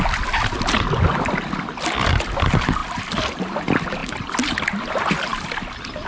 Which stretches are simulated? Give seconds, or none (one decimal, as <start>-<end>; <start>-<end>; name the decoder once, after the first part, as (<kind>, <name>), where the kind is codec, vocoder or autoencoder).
none